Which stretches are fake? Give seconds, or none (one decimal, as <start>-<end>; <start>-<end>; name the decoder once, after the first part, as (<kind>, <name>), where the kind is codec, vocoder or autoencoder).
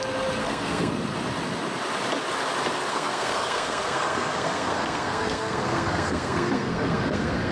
0.4-0.9 (codec, SNAC); 2.9-7.5